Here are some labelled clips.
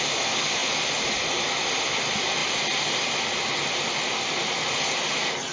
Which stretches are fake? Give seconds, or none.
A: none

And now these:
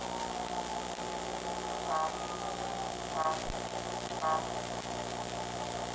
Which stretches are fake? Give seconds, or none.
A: none

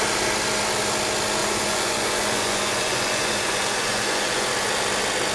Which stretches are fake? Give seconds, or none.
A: 1.4-4.5 (vocoder, Vocos)

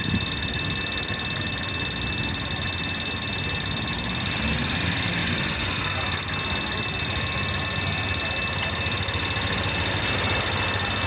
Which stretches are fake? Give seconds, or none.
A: 5.2-5.8 (vocoder, Vocos)

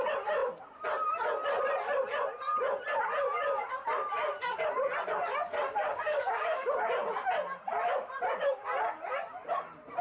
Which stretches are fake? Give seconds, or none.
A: 5.9-6.7 (codec, DAC)

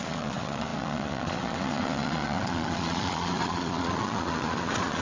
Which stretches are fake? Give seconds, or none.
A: 0.0-5.0 (vocoder, Vocos)